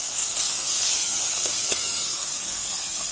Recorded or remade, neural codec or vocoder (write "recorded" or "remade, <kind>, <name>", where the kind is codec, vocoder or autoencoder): remade, codec, SNAC